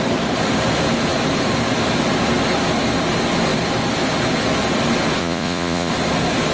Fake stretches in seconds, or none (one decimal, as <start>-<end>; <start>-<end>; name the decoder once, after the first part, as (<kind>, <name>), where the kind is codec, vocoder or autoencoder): 5.2-5.9 (vocoder, Vocos)